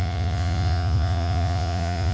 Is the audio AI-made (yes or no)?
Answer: yes